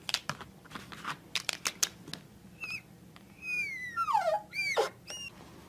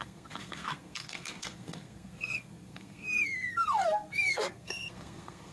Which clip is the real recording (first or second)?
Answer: first